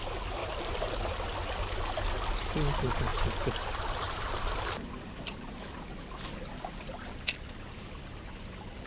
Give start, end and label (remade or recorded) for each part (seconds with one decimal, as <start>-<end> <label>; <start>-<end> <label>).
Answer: 0.0-0.4 recorded; 0.4-0.9 remade; 0.9-3.1 recorded; 3.1-5.6 remade; 5.6-8.9 recorded